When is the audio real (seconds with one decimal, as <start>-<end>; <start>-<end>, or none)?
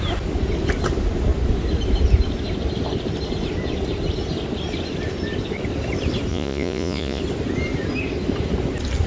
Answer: 0.0-6.3; 7.2-9.1